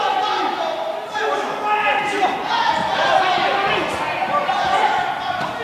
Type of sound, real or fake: real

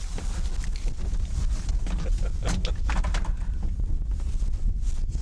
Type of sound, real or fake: real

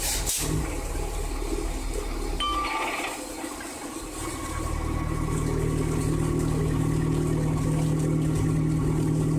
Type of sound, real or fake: real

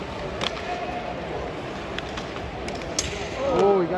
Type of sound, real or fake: real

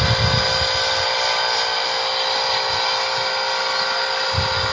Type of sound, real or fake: real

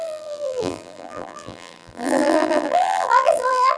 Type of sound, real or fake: fake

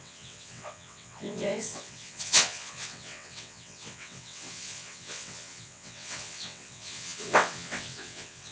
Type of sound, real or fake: fake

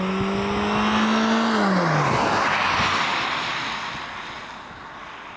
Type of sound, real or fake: real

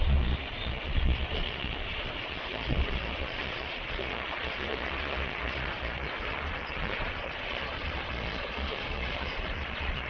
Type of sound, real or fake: fake